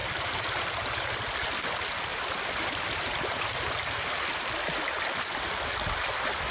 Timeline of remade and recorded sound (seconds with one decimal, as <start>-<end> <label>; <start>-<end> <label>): 0.0-0.7 remade; 0.7-2.1 recorded; 2.1-4.7 remade; 4.7-6.5 recorded